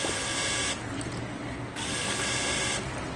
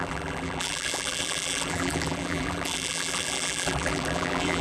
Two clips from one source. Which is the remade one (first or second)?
second